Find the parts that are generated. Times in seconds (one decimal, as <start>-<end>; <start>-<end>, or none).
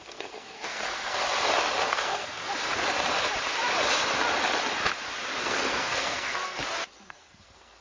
0.0-1.2; 1.8-2.4; 5.4-6.6; 7.1-7.8